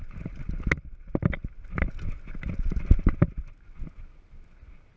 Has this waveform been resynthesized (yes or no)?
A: no